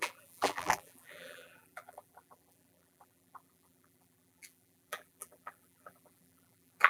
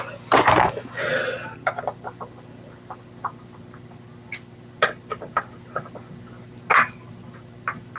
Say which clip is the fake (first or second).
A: first